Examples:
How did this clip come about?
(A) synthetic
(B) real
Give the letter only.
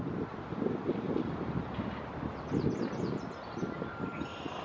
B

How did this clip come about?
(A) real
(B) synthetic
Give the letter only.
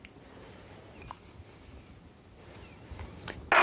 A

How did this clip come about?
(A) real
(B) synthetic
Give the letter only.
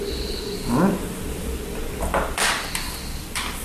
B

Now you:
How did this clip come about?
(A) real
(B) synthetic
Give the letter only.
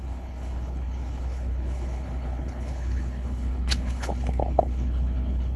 B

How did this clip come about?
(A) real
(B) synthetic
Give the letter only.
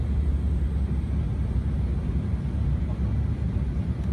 A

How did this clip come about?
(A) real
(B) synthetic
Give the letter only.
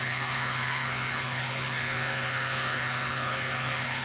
B